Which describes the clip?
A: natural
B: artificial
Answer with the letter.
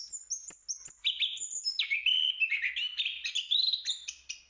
A